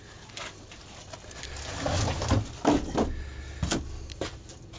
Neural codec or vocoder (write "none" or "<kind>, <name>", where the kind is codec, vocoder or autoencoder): none